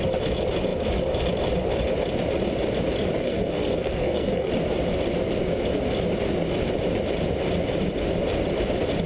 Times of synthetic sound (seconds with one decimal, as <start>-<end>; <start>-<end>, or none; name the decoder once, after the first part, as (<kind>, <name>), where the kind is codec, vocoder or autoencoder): 3.2-4.5 (codec, SNAC)